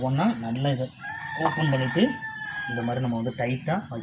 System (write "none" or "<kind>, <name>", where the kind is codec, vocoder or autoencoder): none